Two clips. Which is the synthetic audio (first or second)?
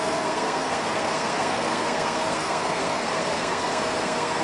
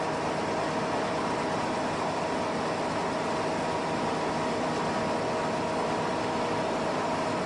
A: first